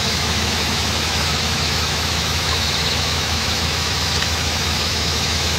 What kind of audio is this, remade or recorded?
remade